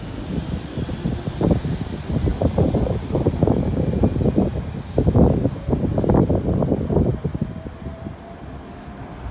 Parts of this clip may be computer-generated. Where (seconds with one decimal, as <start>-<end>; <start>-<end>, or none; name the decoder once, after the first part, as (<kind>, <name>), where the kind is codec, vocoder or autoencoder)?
0.0-2.3 (vocoder, BigVGAN v2); 4.0-4.5; 6.3-7.1; 7.9-9.3

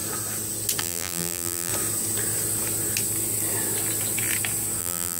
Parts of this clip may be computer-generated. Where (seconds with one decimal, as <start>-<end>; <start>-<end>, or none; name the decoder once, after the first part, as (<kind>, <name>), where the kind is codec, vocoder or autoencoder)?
0.8-1.7 (vocoder, BigVGAN v2); 4.8-5.2

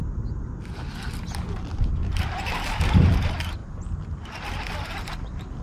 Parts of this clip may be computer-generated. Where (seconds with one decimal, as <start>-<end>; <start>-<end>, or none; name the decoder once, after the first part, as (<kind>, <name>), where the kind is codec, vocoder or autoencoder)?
0.0-0.7 (vocoder, BigVGAN v2); 2.0-3.0

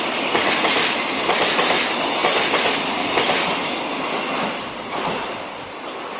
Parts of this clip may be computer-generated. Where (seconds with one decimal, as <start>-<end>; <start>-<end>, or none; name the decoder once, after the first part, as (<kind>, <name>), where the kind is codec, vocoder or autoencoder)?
0.0-6.2 (vocoder, BigVGAN v2)

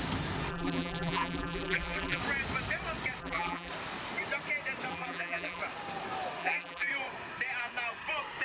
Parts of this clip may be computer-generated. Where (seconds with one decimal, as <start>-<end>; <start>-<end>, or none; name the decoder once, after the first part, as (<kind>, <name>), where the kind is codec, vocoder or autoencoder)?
0.5-2.2 (vocoder, BigVGAN v2); 3.2-3.7; 4.9-5.6; 6.4-6.9